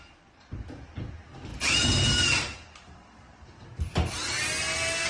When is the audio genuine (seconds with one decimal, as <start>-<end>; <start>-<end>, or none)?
0.0-5.1